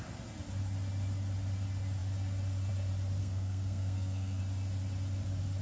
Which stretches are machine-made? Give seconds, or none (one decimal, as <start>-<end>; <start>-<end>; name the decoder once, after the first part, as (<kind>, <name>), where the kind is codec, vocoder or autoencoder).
3.2-4.4 (codec, SNAC)